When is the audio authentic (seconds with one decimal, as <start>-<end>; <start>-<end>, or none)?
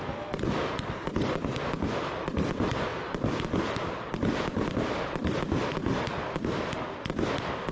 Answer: 0.0-7.7